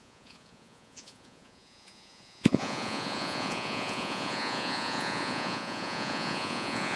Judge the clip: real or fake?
fake